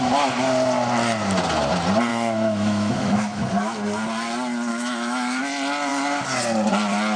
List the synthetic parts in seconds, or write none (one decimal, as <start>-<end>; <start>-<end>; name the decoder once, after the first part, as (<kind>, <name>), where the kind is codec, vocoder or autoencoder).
2.1-3.4 (autoencoder, DAC-VAE); 4.7-5.4